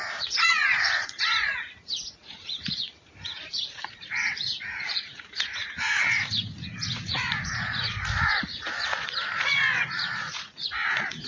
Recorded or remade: remade